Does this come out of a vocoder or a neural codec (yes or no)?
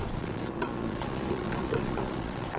yes